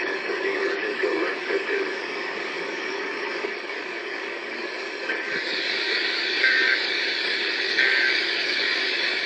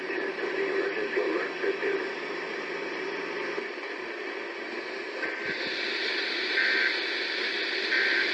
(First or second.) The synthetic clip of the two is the first